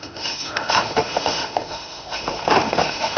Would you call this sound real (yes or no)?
no